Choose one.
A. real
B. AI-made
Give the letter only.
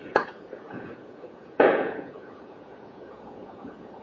B